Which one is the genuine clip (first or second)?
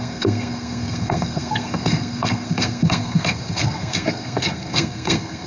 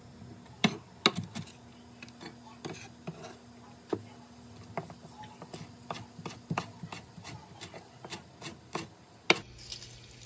second